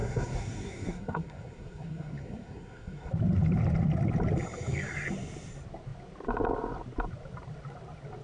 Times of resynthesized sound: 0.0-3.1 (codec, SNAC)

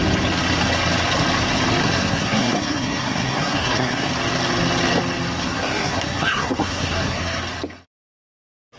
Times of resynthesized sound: 1.8-4.1 (codec, SNAC); 5.4-7.4

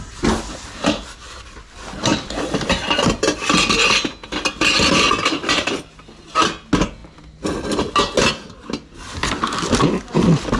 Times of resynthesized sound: none

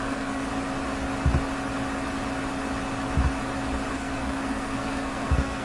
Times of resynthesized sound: 0.0-0.5 (codec, SNAC); 3.9-5.6